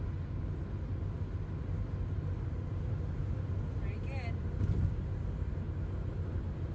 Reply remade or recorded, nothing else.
recorded